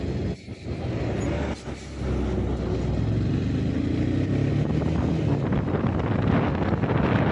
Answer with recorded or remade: recorded